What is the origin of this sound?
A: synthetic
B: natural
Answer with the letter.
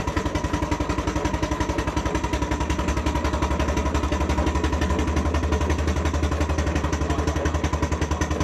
B